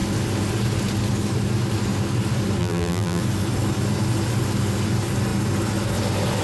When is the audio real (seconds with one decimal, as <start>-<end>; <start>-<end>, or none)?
0.0-2.6; 3.2-6.4